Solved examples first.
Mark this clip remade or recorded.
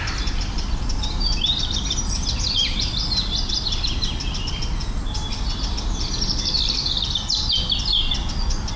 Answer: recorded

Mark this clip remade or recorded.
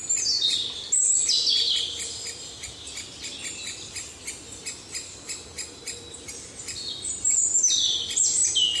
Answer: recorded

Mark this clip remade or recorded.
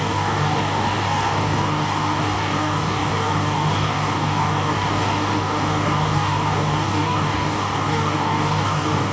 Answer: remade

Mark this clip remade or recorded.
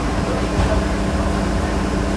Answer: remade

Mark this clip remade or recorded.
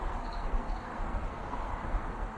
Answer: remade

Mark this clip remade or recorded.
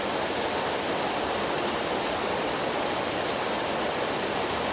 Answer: recorded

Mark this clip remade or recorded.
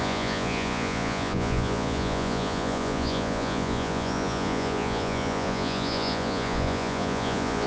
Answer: remade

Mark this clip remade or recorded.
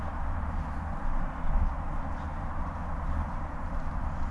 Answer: remade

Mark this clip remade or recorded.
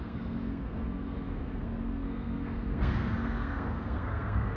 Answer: remade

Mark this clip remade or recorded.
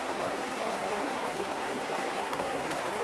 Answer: remade